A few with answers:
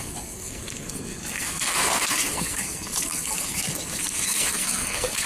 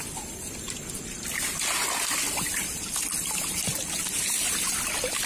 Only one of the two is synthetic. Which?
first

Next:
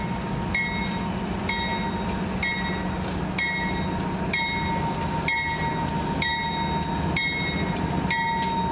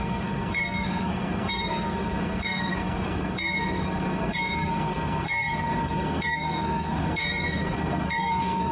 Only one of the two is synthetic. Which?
second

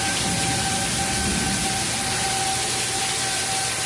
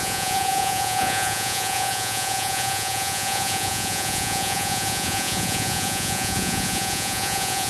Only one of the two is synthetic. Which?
second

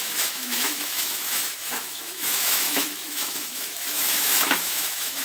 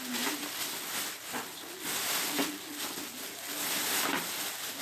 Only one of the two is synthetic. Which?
first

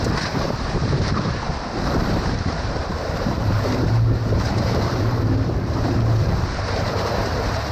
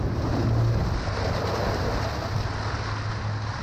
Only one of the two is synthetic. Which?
first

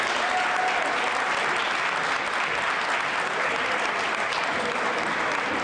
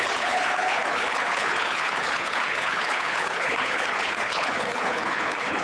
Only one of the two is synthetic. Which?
second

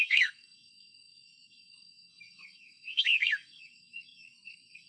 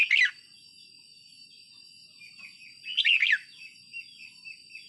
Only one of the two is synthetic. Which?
first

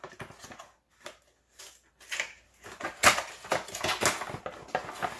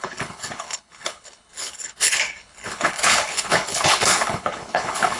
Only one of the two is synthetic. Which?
second